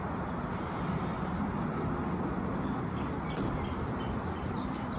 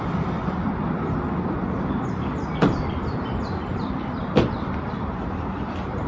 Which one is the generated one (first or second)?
second